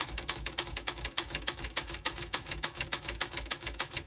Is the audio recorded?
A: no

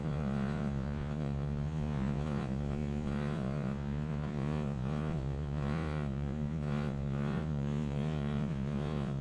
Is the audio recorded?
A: no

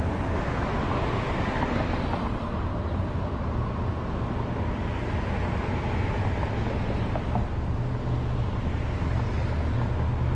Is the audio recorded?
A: yes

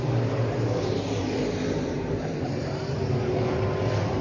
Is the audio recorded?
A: no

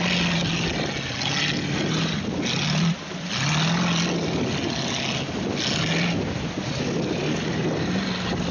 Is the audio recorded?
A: yes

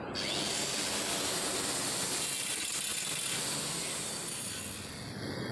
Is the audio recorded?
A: yes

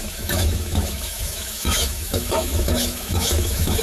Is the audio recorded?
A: no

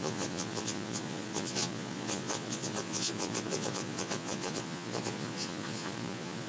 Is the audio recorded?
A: no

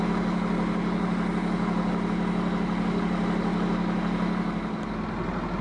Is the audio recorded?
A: yes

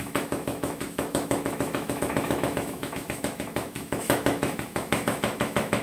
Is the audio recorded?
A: no